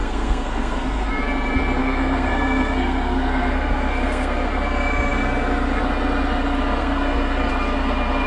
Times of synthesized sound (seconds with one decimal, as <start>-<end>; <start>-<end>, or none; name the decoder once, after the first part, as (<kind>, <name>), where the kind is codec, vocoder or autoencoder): 0.0-1.1 (codec, SNAC); 1.8-4.5; 6.8-7.5